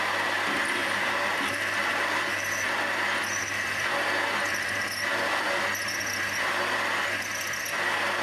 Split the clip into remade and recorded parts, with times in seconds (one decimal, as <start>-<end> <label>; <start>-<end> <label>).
0.0-0.8 recorded; 0.8-2.6 remade; 2.6-8.2 recorded